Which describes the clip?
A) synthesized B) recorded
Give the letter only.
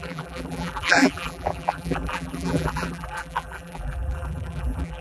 A